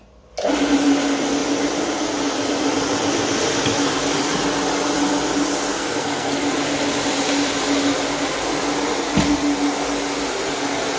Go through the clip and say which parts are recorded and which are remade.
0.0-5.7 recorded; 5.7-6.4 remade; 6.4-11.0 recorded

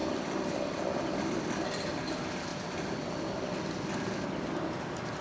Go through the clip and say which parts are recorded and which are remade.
0.0-5.2 recorded